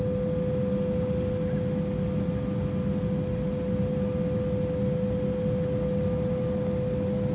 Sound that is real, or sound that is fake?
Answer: real